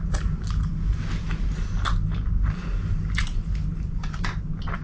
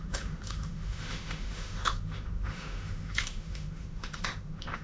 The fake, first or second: second